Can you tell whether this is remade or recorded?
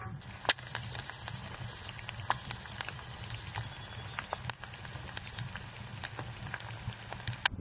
recorded